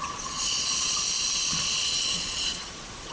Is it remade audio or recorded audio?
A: remade